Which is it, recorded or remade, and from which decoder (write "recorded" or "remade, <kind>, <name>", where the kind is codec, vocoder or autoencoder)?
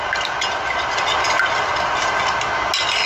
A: recorded